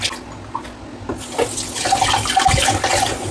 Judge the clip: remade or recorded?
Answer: recorded